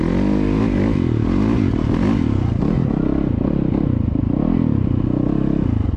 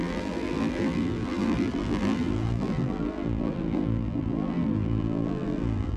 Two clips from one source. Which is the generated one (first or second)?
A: second